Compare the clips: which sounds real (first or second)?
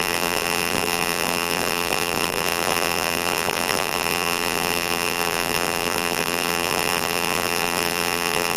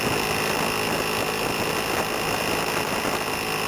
second